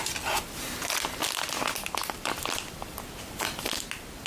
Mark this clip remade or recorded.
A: recorded